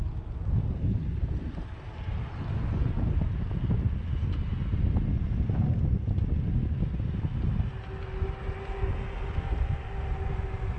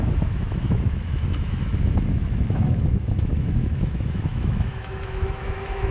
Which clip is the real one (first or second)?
first